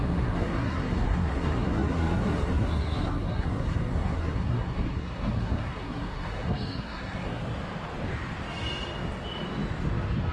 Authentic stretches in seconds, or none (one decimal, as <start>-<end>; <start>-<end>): 7.4-10.3